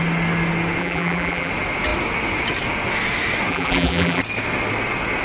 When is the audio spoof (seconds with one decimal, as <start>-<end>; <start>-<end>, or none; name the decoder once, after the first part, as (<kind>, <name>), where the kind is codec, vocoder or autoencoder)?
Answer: 0.8-1.5 (vocoder, BigVGAN v2); 3.5-4.2

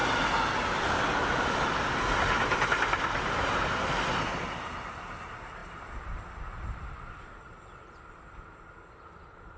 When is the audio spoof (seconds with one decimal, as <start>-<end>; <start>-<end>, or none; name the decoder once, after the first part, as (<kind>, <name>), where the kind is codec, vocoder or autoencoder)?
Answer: none

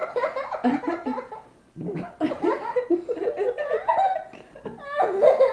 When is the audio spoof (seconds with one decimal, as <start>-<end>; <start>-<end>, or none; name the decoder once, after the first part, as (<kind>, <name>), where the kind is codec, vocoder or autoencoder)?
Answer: none

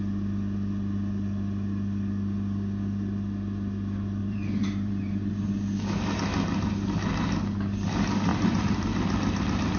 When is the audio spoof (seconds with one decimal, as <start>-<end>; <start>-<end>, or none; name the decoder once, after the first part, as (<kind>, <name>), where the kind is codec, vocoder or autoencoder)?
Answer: 4.2-5.3 (vocoder, BigVGAN v2); 8.3-8.9